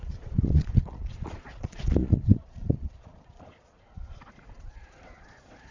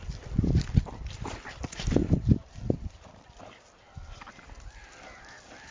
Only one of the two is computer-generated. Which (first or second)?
first